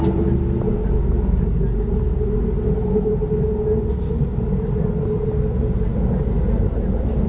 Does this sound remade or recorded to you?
recorded